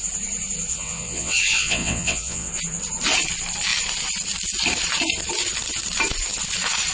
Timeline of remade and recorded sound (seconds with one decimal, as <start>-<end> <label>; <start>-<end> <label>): 0.0-0.7 recorded; 0.7-2.5 remade; 2.5-6.9 recorded